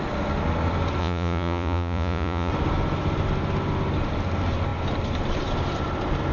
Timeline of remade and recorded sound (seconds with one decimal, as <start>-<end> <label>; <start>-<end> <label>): 0.0-1.0 recorded; 1.0-2.5 remade; 2.5-6.3 recorded